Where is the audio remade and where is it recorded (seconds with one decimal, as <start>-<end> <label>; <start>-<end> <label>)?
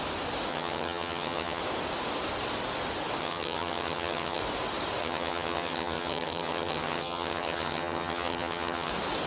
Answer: 0.0-0.5 recorded; 0.5-1.6 remade; 1.6-3.2 recorded; 3.2-4.4 remade; 4.4-5.0 recorded; 5.0-8.9 remade; 8.9-9.3 recorded